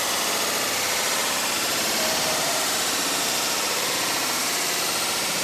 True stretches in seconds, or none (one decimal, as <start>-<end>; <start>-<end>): 0.0-1.2; 4.4-5.4